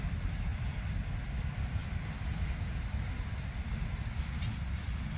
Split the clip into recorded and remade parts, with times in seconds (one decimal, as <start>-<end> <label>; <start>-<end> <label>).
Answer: 0.0-5.2 recorded